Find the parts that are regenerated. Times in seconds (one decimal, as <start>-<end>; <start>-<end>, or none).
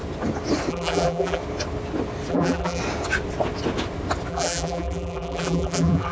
0.7-1.4; 2.3-2.8; 4.3-6.1